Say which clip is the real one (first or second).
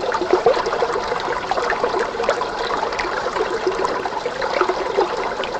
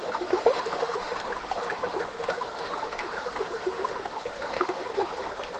first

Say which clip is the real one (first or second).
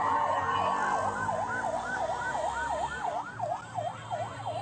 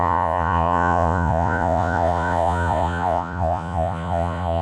first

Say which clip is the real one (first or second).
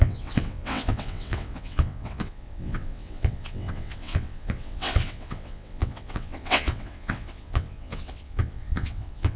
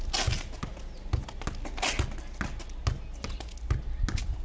second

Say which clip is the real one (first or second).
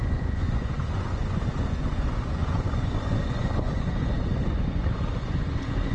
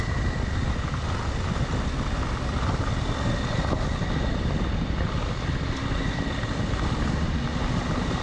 second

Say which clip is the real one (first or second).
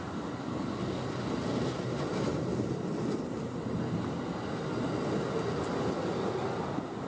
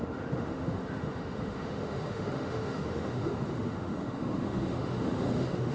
first